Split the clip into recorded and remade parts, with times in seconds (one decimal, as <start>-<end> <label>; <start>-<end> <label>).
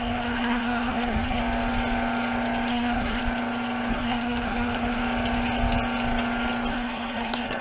0.0-1.4 remade; 1.4-2.7 recorded; 2.7-3.2 remade; 3.2-3.9 recorded; 3.9-5.0 remade; 5.0-6.7 recorded; 6.7-7.6 remade